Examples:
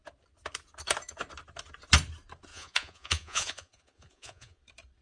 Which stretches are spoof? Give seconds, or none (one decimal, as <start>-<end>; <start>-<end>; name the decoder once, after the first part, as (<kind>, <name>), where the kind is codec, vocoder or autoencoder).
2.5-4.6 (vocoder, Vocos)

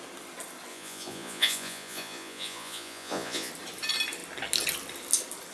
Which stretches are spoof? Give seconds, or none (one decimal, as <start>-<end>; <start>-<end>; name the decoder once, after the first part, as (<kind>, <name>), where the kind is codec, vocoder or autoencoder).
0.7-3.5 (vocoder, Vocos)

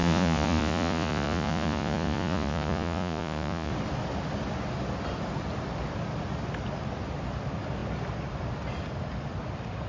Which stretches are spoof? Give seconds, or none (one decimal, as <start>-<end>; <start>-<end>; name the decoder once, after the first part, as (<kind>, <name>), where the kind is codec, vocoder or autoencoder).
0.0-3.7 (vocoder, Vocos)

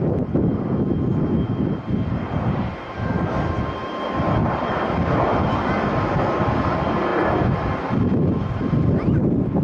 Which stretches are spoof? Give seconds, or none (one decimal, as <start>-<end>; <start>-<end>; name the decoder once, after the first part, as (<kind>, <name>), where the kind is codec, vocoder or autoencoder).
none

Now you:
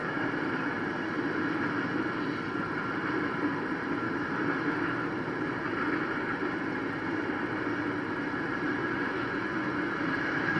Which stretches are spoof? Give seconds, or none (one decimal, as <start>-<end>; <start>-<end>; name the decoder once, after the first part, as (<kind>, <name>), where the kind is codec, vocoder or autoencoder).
8.8-9.9 (vocoder, Vocos)

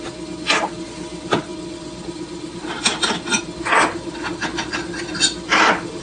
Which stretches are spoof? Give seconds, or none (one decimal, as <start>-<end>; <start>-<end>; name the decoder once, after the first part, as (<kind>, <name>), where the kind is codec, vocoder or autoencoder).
none

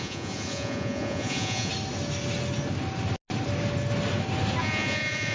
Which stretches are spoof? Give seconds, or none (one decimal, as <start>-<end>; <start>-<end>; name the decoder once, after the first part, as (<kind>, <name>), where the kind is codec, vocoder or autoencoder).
0.0-1.7 (vocoder, Vocos); 4.6-5.3

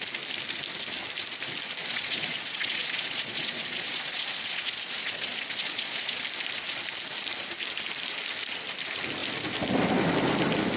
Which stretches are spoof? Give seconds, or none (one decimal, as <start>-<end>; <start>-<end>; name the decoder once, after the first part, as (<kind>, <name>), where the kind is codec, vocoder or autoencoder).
1.8-6.2 (vocoder, Vocos)